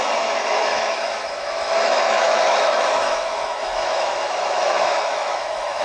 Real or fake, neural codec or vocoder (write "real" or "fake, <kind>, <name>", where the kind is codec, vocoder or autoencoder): fake, autoencoder, DAC-VAE